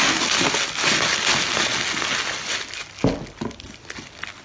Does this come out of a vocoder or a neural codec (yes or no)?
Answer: no